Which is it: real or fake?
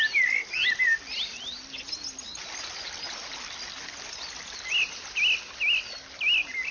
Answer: real